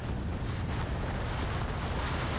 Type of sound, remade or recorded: recorded